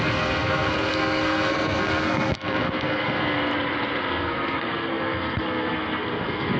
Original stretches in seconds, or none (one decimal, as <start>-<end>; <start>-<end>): 3.5-4.1